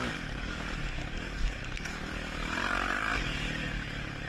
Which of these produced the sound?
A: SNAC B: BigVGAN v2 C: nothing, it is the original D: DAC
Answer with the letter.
D